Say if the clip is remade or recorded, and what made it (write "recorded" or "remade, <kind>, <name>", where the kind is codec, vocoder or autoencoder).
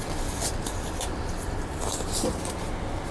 recorded